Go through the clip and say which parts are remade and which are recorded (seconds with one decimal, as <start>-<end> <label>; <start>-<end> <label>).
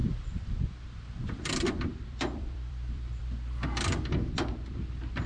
0.0-3.2 remade; 3.2-5.3 recorded